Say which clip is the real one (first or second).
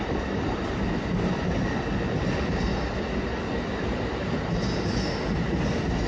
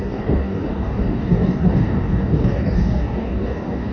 first